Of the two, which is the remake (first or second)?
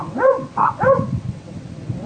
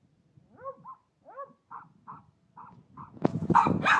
first